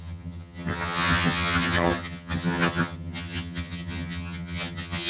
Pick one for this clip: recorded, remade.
remade